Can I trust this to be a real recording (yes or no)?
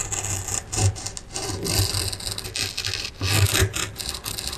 yes